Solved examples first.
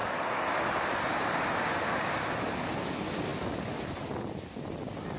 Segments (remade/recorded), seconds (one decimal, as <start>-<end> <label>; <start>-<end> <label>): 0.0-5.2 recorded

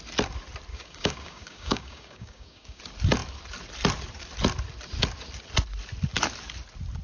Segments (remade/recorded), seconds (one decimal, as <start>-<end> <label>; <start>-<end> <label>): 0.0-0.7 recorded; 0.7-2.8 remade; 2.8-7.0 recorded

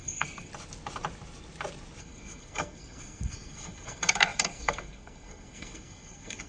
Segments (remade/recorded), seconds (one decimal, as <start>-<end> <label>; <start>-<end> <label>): 0.0-0.5 remade; 0.5-2.0 recorded; 2.0-6.5 remade